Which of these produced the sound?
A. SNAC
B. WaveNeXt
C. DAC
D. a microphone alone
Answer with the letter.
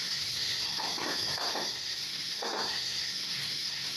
A